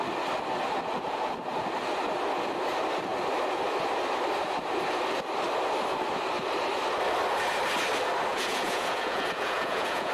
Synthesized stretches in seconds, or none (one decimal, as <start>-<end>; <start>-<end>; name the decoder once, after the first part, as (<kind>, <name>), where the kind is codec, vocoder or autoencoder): 8.3-10.1 (vocoder, Vocos)